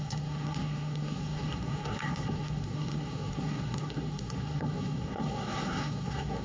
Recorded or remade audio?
remade